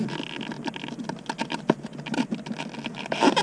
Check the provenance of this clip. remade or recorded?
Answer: recorded